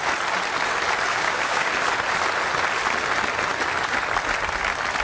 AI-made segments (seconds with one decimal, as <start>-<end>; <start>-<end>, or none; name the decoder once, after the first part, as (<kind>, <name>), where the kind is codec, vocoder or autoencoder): 1.1-1.7 (codec, DAC)